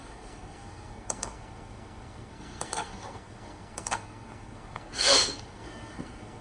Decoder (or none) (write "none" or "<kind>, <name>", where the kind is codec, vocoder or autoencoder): codec, SNAC